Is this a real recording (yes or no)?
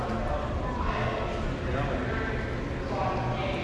yes